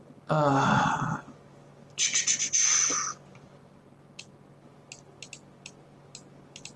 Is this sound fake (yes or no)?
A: no